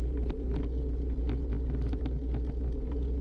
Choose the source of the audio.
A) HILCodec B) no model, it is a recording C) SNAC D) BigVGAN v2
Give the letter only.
B